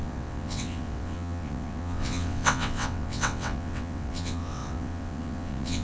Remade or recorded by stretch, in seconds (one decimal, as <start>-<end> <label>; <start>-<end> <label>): 0.0-5.8 remade